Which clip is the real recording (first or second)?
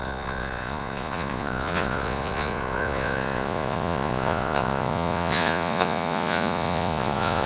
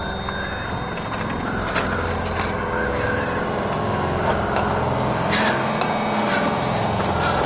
second